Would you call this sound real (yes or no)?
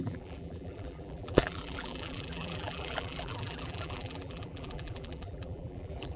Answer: no